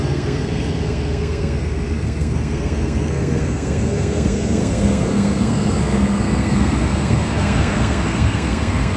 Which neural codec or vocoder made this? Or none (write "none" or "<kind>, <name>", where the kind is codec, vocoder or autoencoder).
codec, SNAC